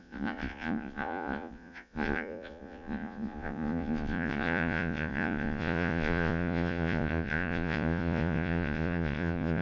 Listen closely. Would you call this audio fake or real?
fake